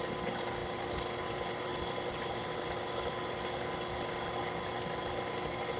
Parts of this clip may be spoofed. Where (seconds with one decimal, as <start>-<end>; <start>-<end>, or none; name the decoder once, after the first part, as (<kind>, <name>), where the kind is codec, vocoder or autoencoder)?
none